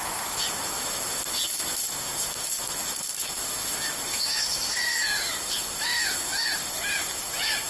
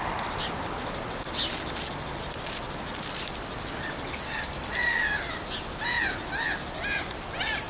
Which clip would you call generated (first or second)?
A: first